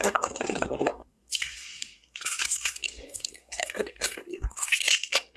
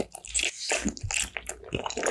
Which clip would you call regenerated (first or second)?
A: first